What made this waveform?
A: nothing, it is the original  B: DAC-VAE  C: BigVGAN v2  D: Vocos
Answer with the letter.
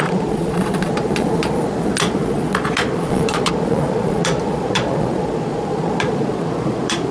D